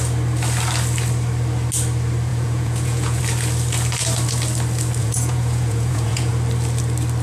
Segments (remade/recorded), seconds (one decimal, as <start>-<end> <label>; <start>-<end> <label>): 0.0-2.3 recorded; 2.3-3.2 remade; 3.2-5.0 recorded; 5.0-6.3 remade; 6.3-7.2 recorded